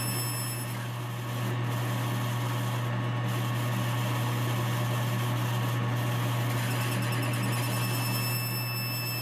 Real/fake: real